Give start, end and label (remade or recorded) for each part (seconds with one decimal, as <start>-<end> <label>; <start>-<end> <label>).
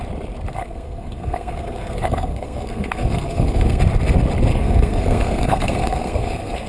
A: 0.0-0.5 recorded; 0.5-3.8 remade; 3.8-4.5 recorded; 4.5-6.7 remade